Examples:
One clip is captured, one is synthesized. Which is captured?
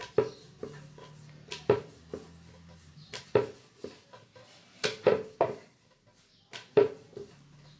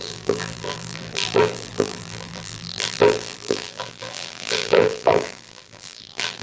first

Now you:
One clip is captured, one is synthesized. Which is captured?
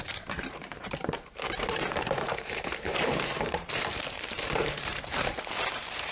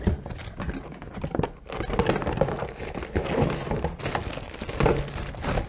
second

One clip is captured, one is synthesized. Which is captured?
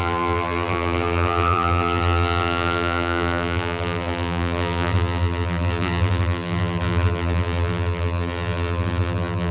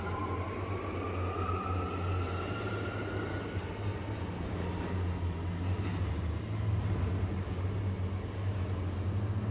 second